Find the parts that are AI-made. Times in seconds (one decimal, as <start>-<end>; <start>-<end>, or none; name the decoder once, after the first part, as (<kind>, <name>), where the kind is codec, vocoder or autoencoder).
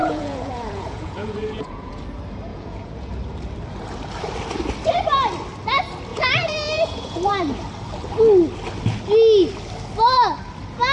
0.0-2.0 (vocoder, Vocos); 2.5-3.1; 6.1-7.3